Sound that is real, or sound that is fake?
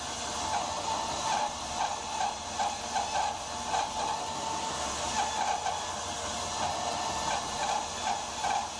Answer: real